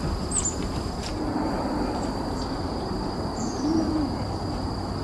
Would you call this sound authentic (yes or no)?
no